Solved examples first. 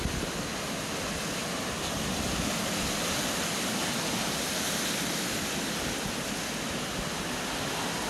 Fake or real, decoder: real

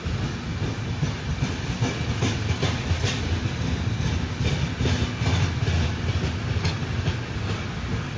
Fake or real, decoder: real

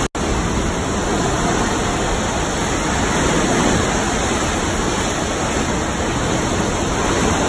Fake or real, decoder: real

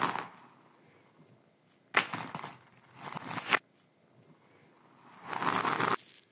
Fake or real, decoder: real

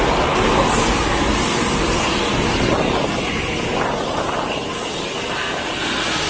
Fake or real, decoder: real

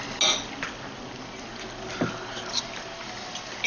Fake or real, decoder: real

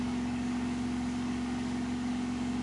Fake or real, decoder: fake, codec, DAC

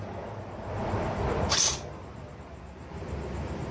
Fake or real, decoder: real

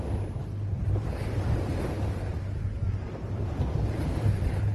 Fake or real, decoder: fake, vocoder, BigVGAN v2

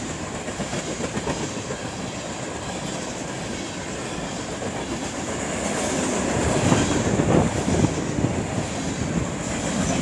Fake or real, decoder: fake, vocoder, BigVGAN v2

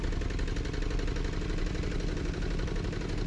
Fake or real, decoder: real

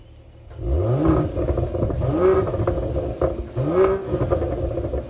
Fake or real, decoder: real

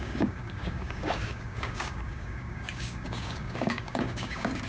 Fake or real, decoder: fake, codec, DAC